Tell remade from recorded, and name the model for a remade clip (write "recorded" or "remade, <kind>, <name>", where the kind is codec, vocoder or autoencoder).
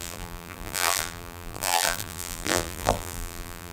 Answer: remade, vocoder, BigVGAN v2